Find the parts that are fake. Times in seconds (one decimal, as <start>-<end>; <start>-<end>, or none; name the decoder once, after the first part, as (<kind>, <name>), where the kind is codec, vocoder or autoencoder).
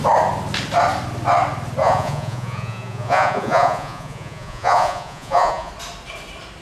1.8-5.7 (vocoder, Vocos)